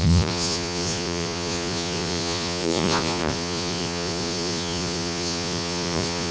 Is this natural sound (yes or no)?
no